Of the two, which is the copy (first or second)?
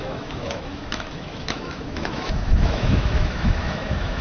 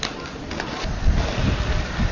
first